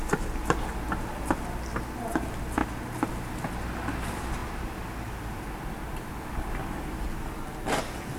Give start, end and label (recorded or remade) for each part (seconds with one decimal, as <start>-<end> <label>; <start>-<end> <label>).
0.0-8.2 recorded